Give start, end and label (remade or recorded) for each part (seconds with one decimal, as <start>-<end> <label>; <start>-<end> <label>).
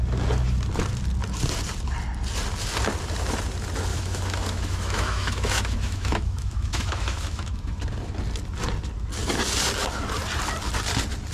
0.0-3.9 recorded; 3.9-7.8 remade; 7.8-11.3 recorded